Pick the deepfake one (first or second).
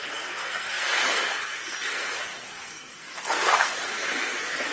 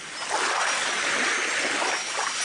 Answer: first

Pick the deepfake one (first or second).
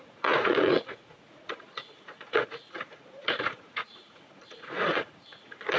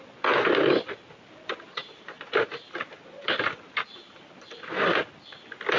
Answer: first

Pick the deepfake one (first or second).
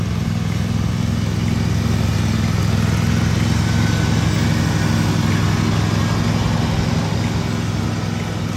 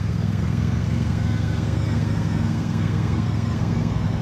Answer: second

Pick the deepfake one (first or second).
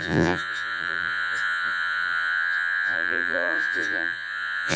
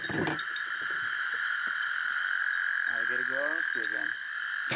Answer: first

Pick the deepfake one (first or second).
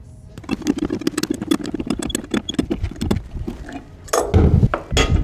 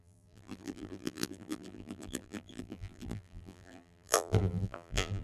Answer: second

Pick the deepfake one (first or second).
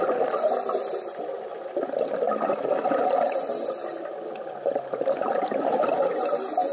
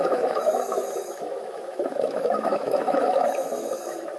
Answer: second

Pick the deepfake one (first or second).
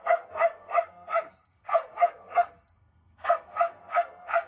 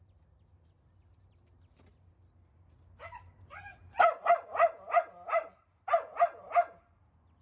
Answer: first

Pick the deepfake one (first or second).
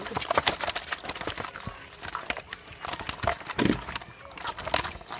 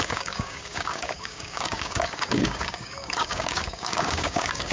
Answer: second